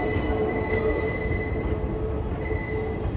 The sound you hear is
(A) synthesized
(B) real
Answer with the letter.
B